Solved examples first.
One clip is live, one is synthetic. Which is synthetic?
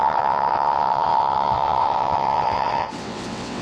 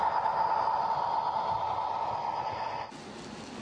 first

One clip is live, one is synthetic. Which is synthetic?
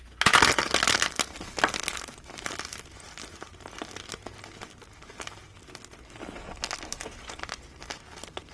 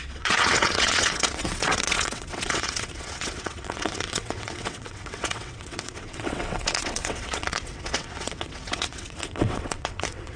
second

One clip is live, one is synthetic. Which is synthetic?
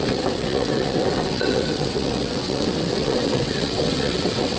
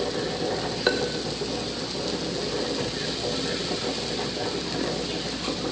first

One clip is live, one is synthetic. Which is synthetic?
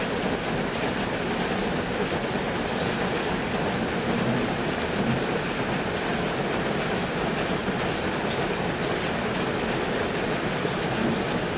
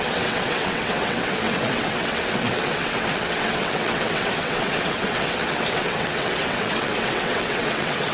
second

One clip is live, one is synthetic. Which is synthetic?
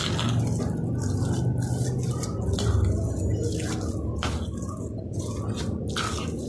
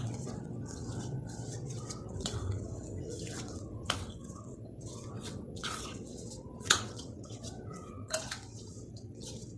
second